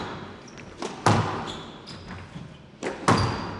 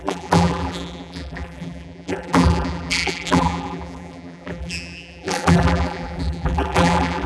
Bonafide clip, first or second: first